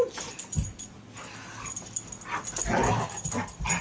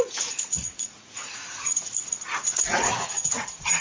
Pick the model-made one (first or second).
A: second